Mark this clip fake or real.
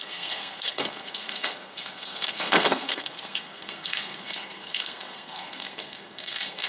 fake